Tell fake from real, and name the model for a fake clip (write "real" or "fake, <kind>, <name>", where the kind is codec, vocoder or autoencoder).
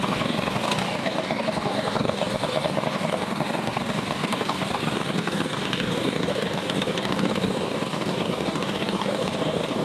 fake, codec, DAC